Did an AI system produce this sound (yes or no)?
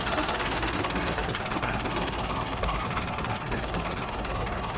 yes